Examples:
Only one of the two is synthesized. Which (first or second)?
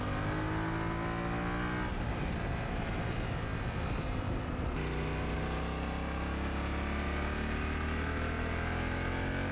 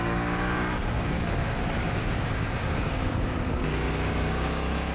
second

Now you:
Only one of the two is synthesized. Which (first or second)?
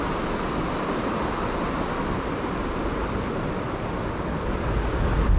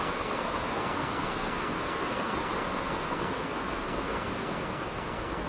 second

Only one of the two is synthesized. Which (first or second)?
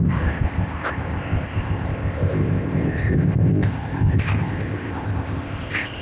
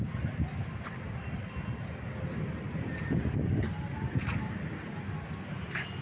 first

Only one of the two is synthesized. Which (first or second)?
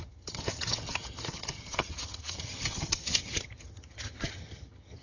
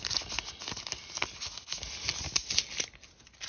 first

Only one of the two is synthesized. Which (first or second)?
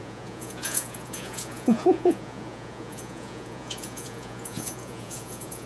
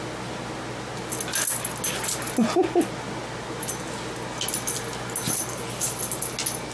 first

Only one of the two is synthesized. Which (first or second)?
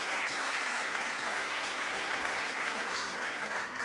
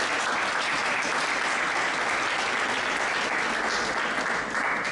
first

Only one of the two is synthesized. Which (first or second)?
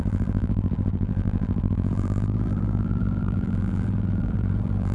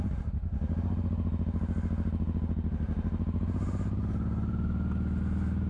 first